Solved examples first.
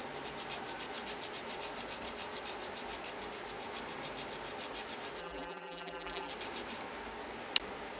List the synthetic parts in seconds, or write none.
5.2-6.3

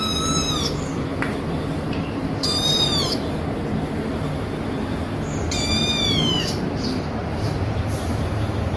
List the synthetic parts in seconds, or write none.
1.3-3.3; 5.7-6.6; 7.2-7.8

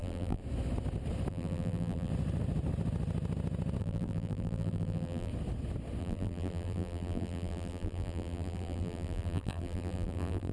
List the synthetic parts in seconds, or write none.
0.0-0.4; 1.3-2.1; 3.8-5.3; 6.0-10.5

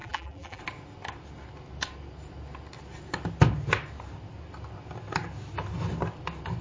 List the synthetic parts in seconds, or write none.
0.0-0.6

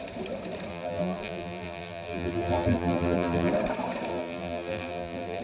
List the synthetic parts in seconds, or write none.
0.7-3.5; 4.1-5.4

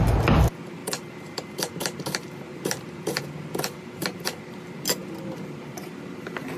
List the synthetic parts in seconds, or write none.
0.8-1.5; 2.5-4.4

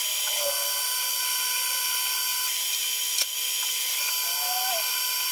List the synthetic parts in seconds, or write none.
2.3-2.8